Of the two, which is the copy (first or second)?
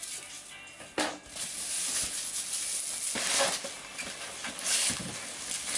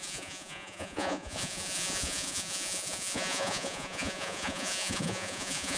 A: second